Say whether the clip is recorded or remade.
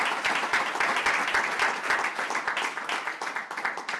recorded